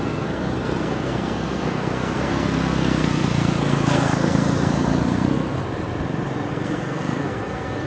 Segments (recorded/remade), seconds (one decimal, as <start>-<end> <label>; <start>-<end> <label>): 0.0-5.6 remade; 5.6-6.5 recorded; 6.5-7.9 remade